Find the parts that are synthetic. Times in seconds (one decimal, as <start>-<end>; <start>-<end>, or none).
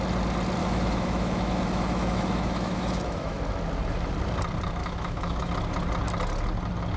0.6-3.4; 4.8-5.5